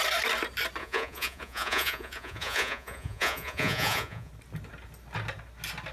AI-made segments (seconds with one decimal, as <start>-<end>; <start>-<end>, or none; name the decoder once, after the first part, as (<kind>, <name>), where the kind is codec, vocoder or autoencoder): 0.8-4.3 (vocoder, Vocos)